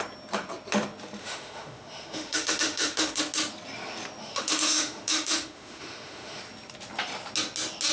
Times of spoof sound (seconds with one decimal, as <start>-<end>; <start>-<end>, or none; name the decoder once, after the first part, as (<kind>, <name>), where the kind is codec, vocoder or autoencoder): 1.2-3.2 (autoencoder, DAC-VAE); 4.2-6.4